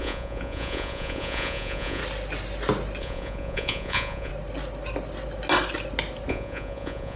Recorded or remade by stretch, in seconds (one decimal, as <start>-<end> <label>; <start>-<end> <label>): 0.0-2.0 remade; 2.0-3.0 recorded; 3.0-4.3 remade; 4.3-6.3 recorded; 6.3-7.2 remade